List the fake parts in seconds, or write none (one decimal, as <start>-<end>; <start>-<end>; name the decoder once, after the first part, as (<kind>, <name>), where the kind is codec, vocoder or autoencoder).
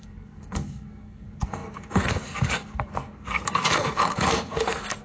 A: 0.0-5.0 (codec, SNAC)